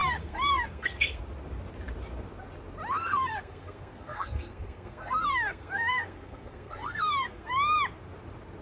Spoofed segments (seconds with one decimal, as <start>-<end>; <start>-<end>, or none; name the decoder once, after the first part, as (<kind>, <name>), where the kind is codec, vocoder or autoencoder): 0.0-1.2 (codec, SNAC); 3.0-7.5